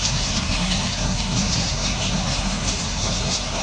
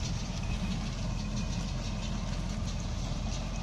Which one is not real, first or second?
first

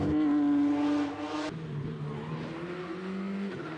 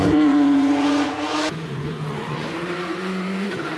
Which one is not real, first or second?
second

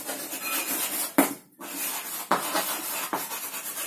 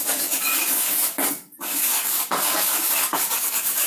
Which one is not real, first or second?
second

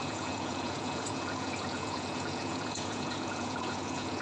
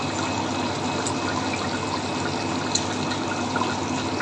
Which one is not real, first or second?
first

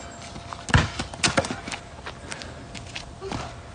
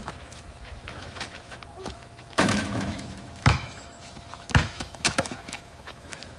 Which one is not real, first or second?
second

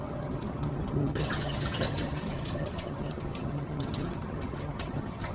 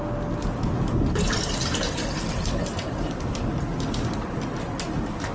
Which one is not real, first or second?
first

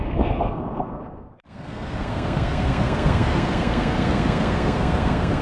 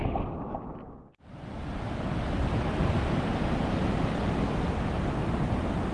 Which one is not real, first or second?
first